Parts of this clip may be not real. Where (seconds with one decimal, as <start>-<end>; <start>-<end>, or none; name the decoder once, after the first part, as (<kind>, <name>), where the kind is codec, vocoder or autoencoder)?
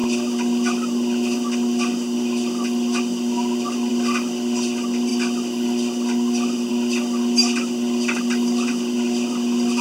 none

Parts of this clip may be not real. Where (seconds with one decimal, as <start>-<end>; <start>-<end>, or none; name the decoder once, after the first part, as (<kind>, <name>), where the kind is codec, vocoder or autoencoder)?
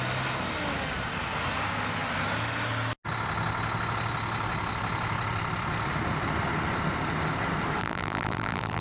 7.8-8.8 (vocoder, BigVGAN v2)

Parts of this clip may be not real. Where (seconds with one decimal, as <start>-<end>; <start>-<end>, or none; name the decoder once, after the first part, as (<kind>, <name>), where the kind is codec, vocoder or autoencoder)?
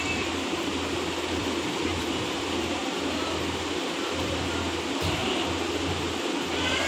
0.0-0.7 (vocoder, BigVGAN v2); 1.4-2.8; 4.2-5.2; 5.9-6.9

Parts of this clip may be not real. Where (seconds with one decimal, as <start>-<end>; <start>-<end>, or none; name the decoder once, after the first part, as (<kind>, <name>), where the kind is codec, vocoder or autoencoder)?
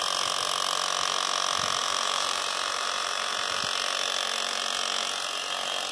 1.8-3.6 (vocoder, BigVGAN v2)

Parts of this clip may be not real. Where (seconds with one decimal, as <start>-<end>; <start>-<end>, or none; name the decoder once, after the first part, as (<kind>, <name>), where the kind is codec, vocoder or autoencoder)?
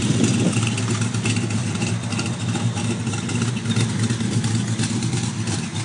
none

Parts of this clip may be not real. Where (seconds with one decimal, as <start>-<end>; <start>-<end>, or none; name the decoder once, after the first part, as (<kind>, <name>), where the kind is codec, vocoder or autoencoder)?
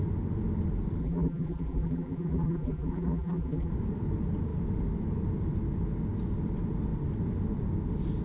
1.0-3.7 (vocoder, BigVGAN v2)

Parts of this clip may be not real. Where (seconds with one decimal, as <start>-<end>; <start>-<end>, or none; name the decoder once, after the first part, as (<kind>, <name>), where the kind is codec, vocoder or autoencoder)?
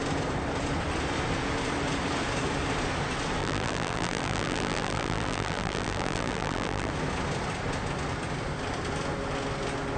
3.4-6.9 (vocoder, BigVGAN v2)